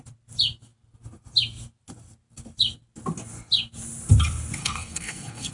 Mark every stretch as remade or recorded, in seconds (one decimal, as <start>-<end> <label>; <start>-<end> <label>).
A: 0.0-4.6 recorded; 4.6-5.5 remade